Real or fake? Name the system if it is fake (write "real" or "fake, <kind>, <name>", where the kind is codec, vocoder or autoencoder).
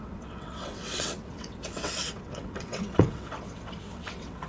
fake, vocoder, WaveNeXt